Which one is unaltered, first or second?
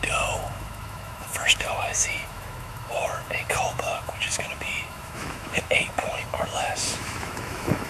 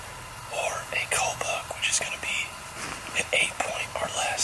second